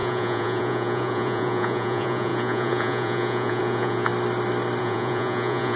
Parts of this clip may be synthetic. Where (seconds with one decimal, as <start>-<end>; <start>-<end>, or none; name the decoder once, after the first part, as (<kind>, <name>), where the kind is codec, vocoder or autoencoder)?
0.0-4.1 (vocoder, Vocos); 4.8-5.8